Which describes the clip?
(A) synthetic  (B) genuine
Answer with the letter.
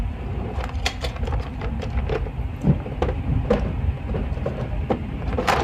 A